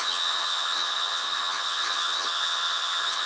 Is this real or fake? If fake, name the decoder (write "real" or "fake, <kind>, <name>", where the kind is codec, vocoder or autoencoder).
fake, vocoder, HiFi-GAN